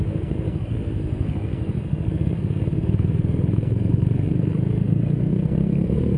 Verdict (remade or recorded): remade